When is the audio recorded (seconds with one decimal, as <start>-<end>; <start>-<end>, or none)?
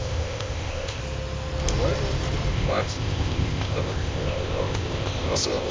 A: 1.0-2.5